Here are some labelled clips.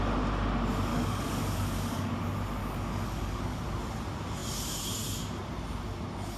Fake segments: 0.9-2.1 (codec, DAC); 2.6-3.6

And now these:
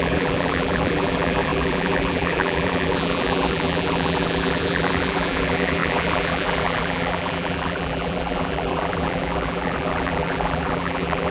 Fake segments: 0.0-11.3 (vocoder, BigVGAN v2)

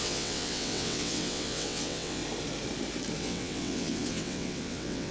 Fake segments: 0.0-2.2 (vocoder, WaveNeXt); 3.2-5.1

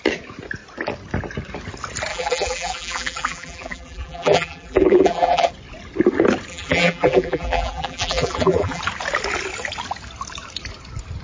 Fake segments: 2.1-5.5 (vocoder, BigVGAN v2); 6.5-8.8

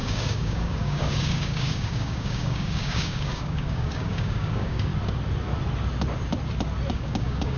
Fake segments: 0.0-4.9 (codec, DAC); 6.9-7.6

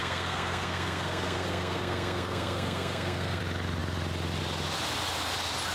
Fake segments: 0.0-3.4 (codec, SNAC)